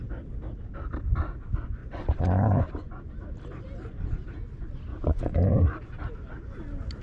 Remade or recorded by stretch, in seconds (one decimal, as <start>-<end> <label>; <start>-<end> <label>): 0.0-1.8 recorded; 1.8-3.1 remade; 3.1-4.9 recorded; 4.9-5.6 remade; 5.6-7.0 recorded